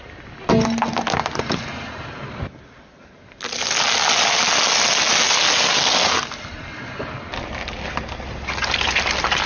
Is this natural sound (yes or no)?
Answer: yes